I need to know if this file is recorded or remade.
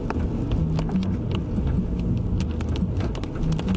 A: recorded